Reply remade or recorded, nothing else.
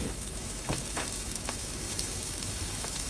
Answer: remade